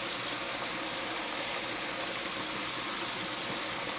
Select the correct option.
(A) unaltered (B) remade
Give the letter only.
A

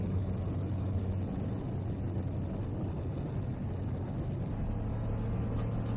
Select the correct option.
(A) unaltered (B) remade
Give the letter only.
A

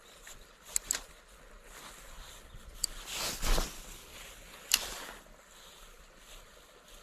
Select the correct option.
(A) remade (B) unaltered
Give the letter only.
B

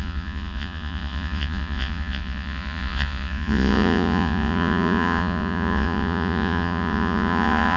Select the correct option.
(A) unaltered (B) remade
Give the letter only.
B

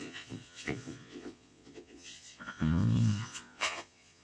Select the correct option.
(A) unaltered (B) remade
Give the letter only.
B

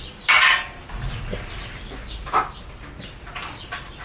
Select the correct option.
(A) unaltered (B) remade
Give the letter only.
A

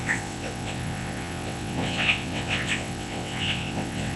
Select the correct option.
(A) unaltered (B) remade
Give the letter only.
B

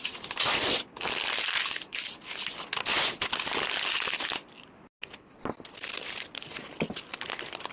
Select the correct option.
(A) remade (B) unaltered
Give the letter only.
B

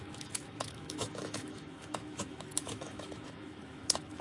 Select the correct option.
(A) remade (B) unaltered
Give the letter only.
A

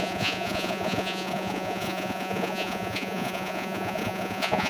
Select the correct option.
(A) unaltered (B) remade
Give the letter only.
B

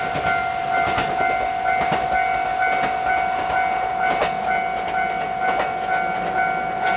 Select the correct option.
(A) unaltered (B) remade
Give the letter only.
A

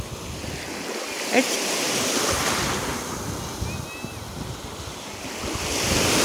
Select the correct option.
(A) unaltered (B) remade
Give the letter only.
A